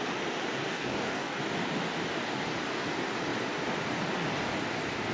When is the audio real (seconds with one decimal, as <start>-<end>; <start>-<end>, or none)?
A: 0.0-0.7; 1.4-5.1